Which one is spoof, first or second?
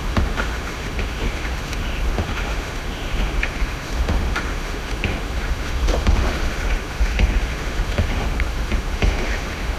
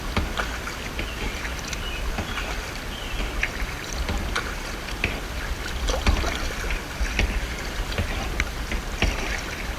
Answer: first